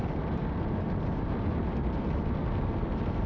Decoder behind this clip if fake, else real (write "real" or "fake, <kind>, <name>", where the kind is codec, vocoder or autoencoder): real